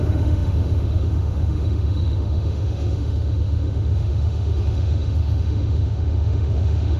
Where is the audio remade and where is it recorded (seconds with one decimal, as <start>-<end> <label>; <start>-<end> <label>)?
0.0-7.0 remade